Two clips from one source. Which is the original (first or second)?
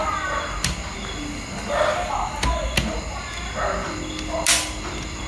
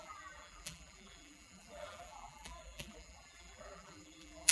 first